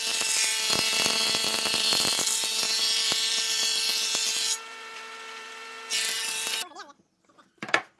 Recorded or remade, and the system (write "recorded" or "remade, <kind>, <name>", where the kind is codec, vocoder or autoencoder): remade, vocoder, BigVGAN v2